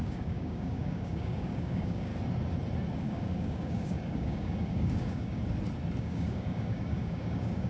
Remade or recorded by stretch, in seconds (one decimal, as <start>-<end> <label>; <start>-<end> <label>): 0.0-2.1 remade; 2.1-3.0 recorded; 3.0-5.4 remade; 5.4-6.0 recorded; 6.0-7.7 remade